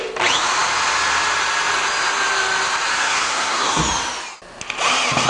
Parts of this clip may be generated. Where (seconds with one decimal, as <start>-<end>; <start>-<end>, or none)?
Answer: 2.9-3.8